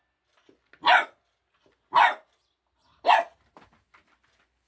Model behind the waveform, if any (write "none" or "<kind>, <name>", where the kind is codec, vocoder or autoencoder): none